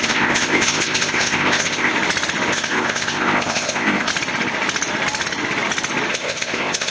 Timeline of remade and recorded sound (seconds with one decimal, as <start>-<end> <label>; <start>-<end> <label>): 0.0-1.9 remade; 1.9-2.5 recorded; 2.5-4.1 remade; 4.1-6.1 recorded; 6.1-6.9 remade